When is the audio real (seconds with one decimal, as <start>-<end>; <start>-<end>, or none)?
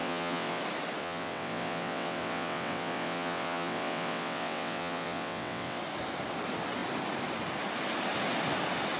0.6-1.0; 5.8-9.0